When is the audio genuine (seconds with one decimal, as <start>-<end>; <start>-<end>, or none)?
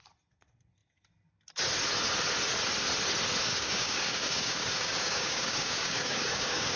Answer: 0.0-3.5